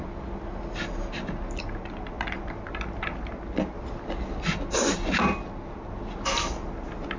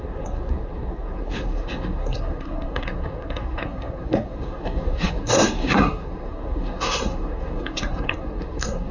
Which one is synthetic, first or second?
second